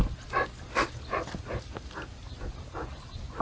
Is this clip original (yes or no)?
yes